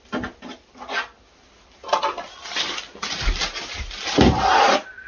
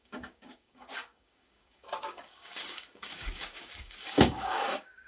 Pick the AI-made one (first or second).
second